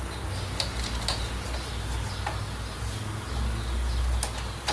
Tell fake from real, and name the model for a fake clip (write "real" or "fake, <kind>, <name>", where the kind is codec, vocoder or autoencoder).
real